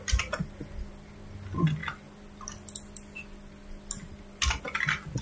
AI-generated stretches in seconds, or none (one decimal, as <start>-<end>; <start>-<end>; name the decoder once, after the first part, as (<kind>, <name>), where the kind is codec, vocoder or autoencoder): none

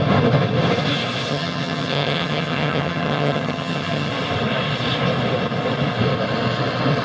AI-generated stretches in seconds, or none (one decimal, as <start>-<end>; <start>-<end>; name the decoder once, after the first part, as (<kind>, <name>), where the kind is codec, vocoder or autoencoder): 1.3-4.1 (vocoder, HiFi-GAN)